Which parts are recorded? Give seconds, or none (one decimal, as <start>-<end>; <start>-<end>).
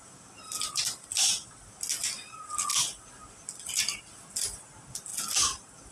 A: 0.0-5.9